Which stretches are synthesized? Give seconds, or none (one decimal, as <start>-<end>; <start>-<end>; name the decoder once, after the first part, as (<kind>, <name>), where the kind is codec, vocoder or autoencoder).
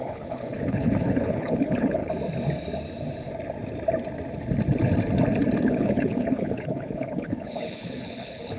0.0-2.0 (codec, HILCodec); 5.6-8.6